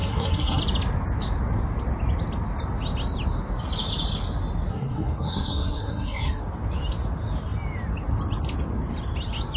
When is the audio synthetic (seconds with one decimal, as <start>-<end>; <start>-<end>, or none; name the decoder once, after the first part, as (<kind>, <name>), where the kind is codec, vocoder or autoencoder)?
0.0-0.6 (codec, SNAC); 4.7-6.4